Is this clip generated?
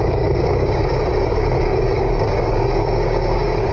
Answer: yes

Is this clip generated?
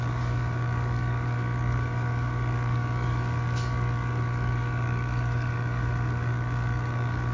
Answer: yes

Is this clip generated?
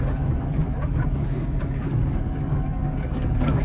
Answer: yes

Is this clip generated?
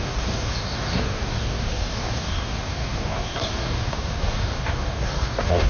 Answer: yes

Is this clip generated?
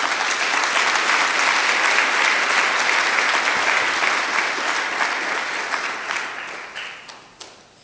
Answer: no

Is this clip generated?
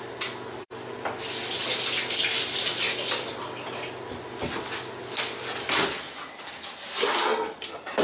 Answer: no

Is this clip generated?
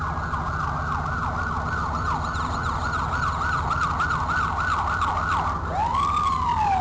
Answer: no